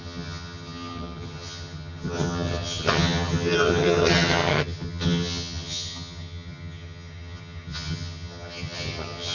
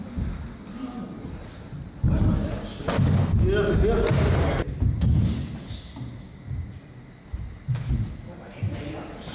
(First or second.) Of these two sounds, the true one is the second